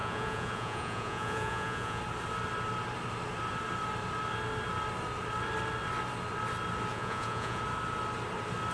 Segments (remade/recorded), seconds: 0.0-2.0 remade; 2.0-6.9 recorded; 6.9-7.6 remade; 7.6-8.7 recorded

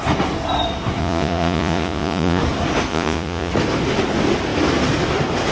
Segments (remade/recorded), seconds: 0.0-1.0 recorded; 1.0-2.4 remade; 2.4-2.9 recorded; 2.9-3.5 remade; 3.5-5.5 recorded

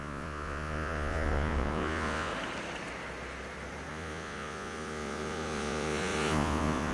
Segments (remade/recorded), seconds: 0.0-2.3 remade; 2.3-3.9 recorded; 3.9-6.9 remade

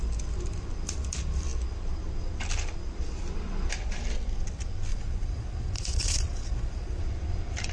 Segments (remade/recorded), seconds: 0.0-4.9 recorded; 4.9-7.0 remade; 7.0-7.7 recorded

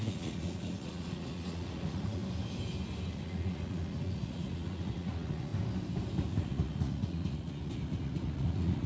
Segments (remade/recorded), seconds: 0.0-2.2 remade; 2.2-3.1 recorded; 3.1-5.5 remade; 5.5-6.3 recorded; 6.3-8.9 remade